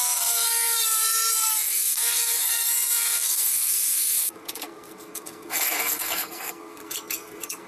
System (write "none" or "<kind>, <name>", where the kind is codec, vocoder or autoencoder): codec, SNAC